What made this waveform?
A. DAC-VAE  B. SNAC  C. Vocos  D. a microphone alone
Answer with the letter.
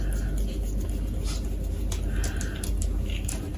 D